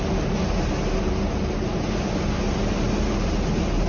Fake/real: real